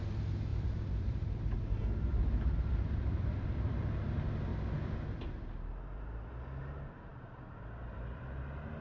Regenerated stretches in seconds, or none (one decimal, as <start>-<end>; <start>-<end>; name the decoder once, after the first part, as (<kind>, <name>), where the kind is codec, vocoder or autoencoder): 0.5-3.8 (vocoder, BigVGAN v2); 7.1-8.2